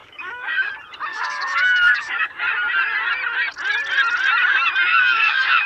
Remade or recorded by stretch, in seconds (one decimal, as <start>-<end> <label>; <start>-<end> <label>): 0.0-0.7 remade; 0.7-1.1 recorded; 1.1-2.4 remade; 2.4-4.9 recorded; 4.9-5.7 remade

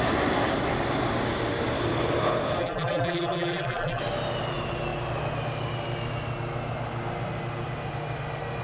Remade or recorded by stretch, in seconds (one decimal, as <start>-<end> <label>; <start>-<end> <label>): 0.0-2.6 recorded; 2.6-4.0 remade; 4.0-8.6 recorded